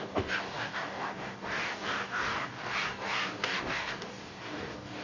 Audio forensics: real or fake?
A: fake